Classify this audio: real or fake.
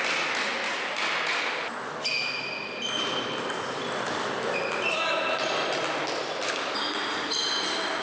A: real